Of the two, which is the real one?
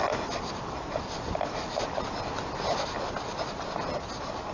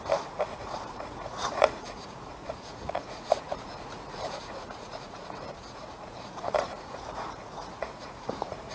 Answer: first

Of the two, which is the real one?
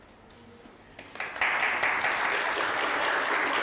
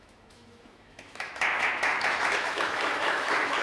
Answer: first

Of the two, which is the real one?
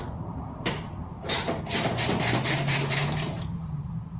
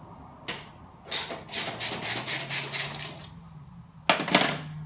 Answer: second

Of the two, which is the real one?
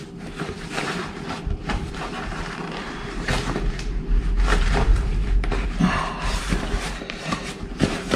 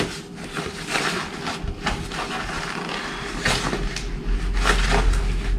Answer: second